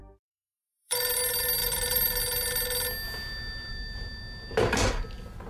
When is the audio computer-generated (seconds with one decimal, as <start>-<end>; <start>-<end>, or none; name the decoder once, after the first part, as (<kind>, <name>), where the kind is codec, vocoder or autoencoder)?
0.0-1.1 (vocoder, BigVGAN v2); 1.6-2.2; 3.7-4.2